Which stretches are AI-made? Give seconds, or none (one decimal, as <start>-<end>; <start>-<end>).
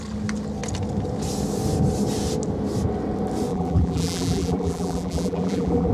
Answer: 3.5-5.9